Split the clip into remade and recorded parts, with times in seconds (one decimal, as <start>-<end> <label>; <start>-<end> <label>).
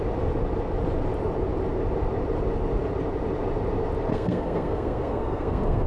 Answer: 0.0-4.1 recorded; 4.1-5.9 remade